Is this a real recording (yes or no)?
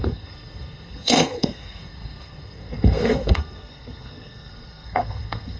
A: no